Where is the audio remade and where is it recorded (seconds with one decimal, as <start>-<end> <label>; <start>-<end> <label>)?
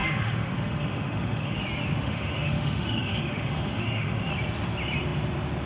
0.0-1.6 remade; 1.6-2.0 recorded; 2.0-4.3 remade; 4.3-5.7 recorded